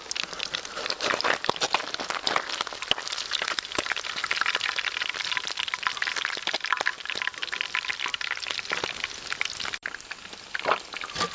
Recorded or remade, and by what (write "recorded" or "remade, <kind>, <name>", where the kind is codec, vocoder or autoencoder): recorded